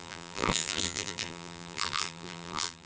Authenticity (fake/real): fake